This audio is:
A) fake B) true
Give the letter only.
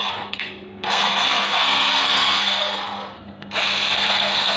A